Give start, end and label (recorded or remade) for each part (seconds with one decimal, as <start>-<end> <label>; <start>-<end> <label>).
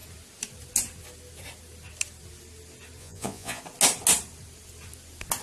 0.0-3.0 recorded; 3.0-3.6 remade; 3.6-5.4 recorded